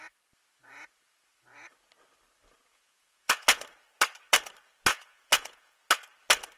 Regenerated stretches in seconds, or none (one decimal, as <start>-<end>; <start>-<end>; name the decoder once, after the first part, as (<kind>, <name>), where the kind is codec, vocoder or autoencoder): 2.7-3.6 (vocoder, Vocos); 4.9-5.8